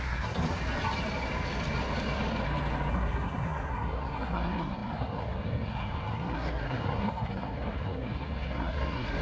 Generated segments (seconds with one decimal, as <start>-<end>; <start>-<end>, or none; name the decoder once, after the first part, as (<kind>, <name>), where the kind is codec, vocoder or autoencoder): 0.0-0.4 (codec, SNAC); 2.9-9.2